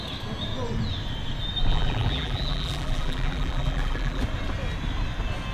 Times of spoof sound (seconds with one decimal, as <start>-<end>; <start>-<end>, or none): 1.7-4.2